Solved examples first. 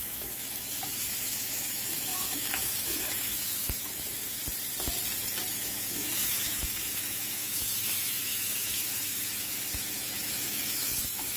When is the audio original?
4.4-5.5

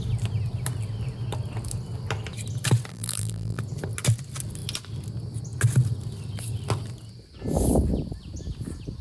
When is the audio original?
0.0-2.9; 3.6-9.0

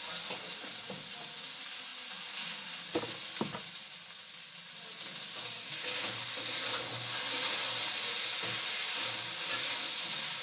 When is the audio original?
0.0-10.4

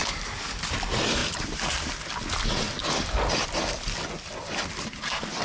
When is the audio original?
0.6-5.4

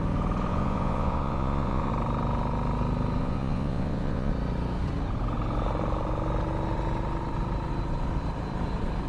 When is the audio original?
0.0-0.5; 1.9-3.2; 4.3-9.1